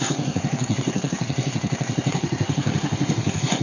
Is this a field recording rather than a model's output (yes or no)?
no